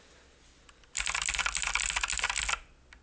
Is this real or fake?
real